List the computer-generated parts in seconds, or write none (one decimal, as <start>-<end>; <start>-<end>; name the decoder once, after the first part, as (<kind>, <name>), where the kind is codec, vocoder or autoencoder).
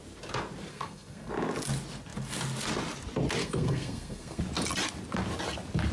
0.7-1.3 (codec, SNAC); 3.4-4.4